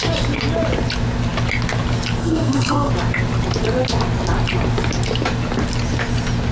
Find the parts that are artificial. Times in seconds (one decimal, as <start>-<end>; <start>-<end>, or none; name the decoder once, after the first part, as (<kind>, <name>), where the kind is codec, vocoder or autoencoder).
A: 2.2-2.9 (codec, SNAC)